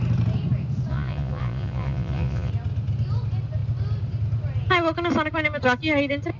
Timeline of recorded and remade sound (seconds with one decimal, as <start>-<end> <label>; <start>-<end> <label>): 0.0-0.9 recorded; 0.9-2.5 remade; 2.5-6.4 recorded